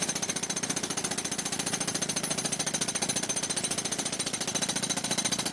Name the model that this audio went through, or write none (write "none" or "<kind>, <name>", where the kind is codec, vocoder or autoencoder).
none